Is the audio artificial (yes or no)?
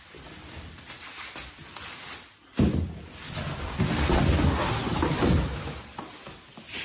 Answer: no